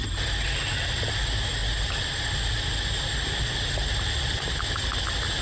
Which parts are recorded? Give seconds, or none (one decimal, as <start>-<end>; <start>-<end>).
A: 0.0-5.4